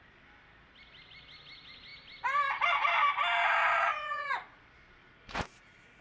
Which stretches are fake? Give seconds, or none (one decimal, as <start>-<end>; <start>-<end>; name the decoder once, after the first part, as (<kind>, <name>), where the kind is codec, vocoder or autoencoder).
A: 3.9-4.6 (vocoder, Vocos); 5.0-6.0